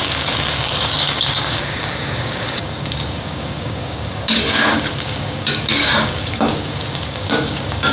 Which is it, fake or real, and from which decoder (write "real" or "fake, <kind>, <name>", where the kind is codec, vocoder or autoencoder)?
fake, codec, DAC